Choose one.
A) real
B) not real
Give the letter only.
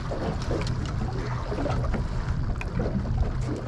A